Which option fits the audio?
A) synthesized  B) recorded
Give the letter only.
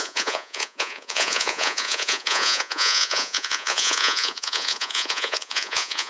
A